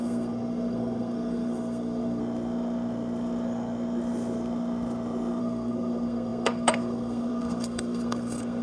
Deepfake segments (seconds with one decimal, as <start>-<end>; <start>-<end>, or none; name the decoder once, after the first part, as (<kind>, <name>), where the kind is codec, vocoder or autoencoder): 0.0-2.2 (codec, SNAC); 5.4-8.6